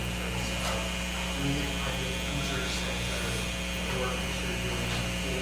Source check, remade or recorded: recorded